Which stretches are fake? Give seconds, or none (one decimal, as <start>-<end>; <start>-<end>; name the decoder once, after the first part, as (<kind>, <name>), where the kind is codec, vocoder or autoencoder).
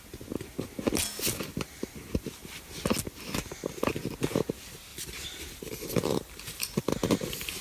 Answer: 4.9-6.9 (vocoder, BigVGAN v2)